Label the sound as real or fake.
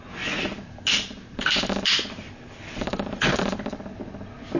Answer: real